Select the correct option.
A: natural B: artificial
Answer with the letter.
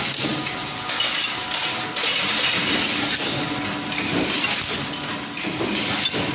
A